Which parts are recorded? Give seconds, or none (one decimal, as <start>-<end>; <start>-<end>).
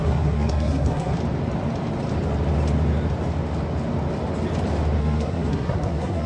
1.2-5.0